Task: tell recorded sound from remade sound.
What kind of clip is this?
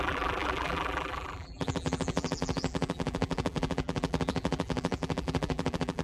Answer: remade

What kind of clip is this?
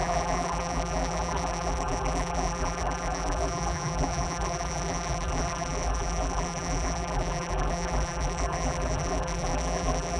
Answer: remade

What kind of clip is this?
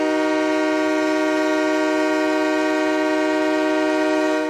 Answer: recorded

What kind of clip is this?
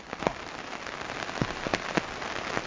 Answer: recorded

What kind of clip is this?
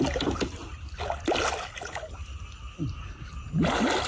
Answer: recorded